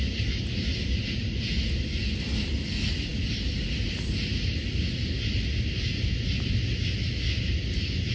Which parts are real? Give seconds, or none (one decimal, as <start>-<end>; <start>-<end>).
0.0-8.1